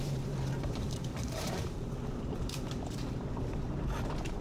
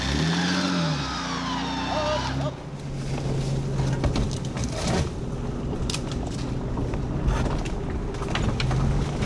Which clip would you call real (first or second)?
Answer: second